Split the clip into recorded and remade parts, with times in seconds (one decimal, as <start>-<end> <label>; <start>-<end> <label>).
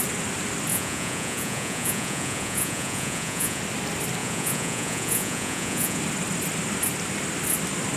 0.0-0.7 recorded; 0.7-3.6 remade; 3.6-4.2 recorded; 4.2-6.0 remade; 6.0-8.0 recorded